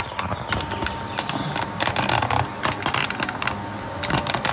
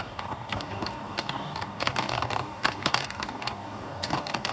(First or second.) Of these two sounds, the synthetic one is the second